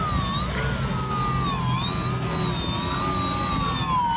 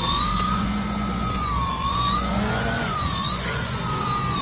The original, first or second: first